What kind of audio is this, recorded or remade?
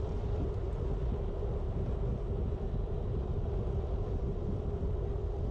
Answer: recorded